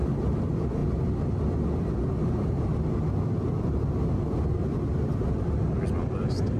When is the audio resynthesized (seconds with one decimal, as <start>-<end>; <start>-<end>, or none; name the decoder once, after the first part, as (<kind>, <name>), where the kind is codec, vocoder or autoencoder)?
none